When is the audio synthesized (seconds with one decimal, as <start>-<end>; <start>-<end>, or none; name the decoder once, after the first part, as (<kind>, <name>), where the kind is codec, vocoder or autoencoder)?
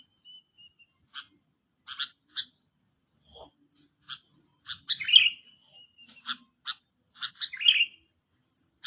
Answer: none